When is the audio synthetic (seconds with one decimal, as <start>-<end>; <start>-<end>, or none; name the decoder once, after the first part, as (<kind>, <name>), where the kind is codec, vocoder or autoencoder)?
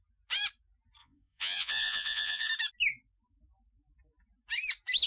1.0-2.5 (vocoder, Vocos)